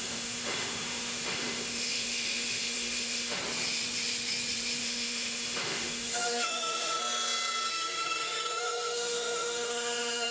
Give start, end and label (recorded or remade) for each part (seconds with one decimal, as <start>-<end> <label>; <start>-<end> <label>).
0.0-3.4 remade; 3.4-4.8 recorded; 4.8-7.0 remade; 7.0-7.7 recorded; 7.7-10.3 remade